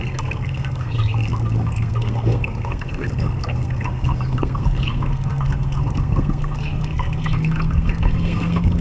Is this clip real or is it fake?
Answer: fake